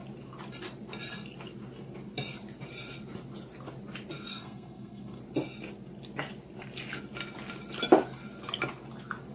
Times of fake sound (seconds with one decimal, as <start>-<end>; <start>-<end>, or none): 4.3-5.2